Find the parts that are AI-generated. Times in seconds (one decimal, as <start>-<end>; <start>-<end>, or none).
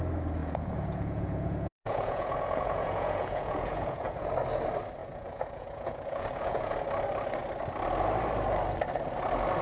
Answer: 0.4-4.3; 5.0-6.7